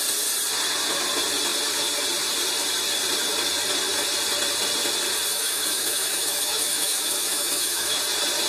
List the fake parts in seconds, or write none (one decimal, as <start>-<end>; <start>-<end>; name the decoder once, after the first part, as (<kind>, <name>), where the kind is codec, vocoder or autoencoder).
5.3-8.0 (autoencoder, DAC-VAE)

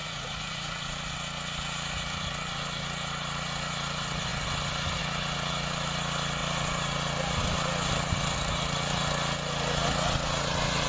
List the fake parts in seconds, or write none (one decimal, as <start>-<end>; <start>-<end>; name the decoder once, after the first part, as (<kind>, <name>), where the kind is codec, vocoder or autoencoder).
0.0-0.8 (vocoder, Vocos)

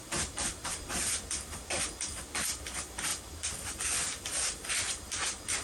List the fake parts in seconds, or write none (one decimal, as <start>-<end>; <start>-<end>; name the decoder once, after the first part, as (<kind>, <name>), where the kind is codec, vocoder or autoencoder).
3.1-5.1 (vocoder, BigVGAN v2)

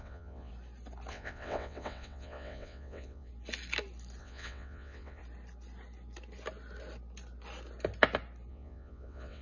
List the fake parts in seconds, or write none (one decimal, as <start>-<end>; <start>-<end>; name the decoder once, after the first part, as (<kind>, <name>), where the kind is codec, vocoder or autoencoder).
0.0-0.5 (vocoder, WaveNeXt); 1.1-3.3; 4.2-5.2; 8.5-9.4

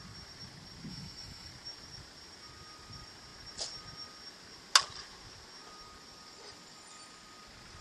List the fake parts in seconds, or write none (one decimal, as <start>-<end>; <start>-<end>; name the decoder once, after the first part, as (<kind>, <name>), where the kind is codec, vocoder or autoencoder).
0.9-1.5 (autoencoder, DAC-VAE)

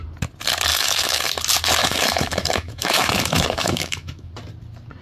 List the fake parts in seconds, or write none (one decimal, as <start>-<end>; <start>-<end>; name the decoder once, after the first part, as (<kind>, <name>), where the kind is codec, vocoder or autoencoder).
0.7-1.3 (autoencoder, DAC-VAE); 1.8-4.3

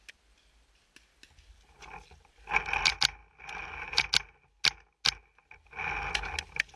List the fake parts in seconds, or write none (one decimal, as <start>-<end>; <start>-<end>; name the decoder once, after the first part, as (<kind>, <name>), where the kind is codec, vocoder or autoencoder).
none